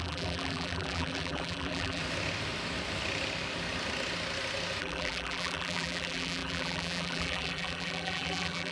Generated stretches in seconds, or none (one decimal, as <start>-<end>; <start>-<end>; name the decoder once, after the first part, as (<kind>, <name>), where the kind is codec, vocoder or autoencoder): 0.0-2.0 (vocoder, BigVGAN v2); 4.8-8.7